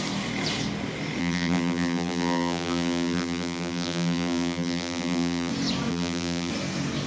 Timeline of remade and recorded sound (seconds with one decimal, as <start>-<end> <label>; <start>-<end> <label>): 0.0-1.2 recorded; 1.2-5.5 remade; 5.5-5.9 recorded; 5.9-6.5 remade; 6.5-7.1 recorded